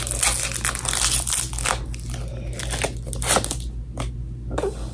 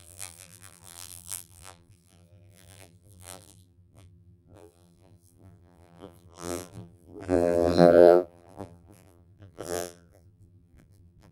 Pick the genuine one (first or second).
first